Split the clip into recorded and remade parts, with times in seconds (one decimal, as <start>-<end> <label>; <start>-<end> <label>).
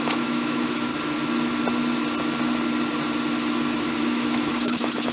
0.0-0.9 remade; 0.9-4.0 recorded; 4.0-5.1 remade